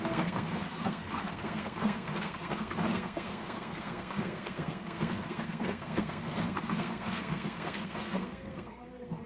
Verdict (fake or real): fake